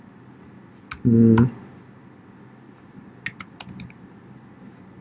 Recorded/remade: recorded